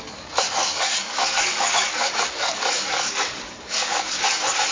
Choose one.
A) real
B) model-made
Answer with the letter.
B